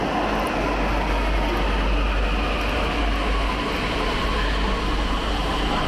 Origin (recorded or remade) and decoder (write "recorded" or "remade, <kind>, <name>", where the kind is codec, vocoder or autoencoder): recorded